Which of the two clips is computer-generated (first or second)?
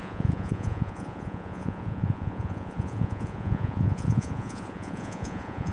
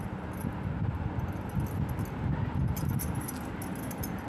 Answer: first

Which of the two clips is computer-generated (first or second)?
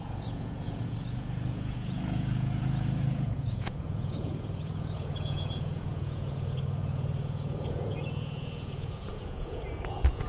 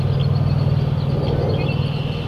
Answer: first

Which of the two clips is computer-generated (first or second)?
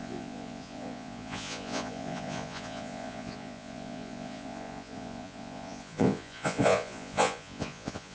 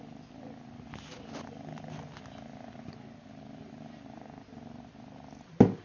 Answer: first